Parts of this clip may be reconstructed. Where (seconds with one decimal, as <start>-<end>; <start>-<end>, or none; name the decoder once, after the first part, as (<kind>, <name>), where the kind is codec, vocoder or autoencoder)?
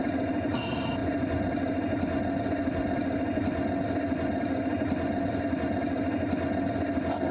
none